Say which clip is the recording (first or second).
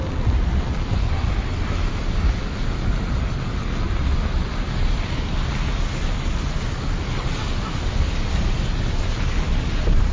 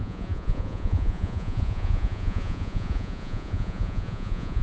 first